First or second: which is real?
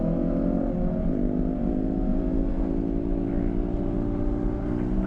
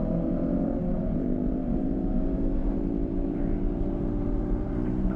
first